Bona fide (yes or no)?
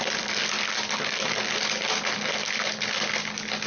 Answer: yes